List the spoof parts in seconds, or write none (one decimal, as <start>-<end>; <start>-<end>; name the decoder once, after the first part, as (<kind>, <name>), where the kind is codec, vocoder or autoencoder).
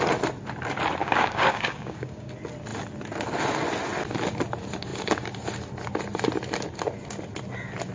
1.0-2.3 (codec, DAC)